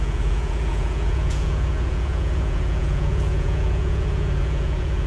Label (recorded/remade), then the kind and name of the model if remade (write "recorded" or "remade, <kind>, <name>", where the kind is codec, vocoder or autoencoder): remade, vocoder, Vocos